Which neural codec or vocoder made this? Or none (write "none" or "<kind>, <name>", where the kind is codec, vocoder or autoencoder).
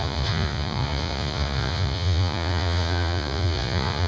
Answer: vocoder, Vocos